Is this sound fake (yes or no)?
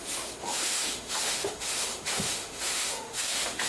yes